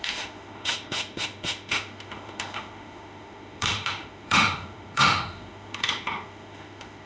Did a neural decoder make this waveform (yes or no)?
yes